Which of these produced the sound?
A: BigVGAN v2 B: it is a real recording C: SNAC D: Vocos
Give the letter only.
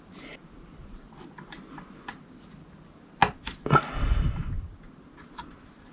B